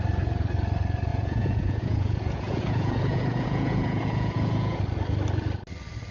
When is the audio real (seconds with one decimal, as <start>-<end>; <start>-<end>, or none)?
0.0-1.1; 4.8-6.1